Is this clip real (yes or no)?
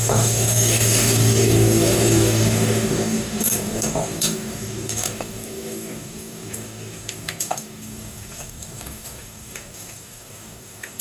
no